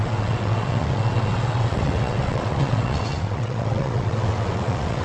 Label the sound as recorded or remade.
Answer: remade